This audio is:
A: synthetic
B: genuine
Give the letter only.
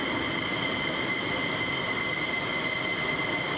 B